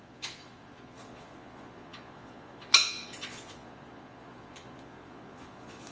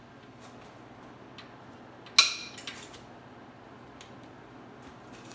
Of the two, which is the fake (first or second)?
first